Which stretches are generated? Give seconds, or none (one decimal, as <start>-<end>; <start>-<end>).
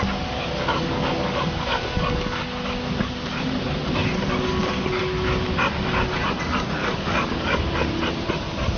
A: 0.7-2.4; 6.8-7.6